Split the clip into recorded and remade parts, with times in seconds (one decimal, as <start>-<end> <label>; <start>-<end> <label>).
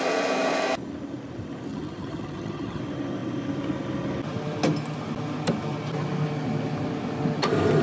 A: 0.0-1.7 recorded; 1.7-2.8 remade; 2.8-7.8 recorded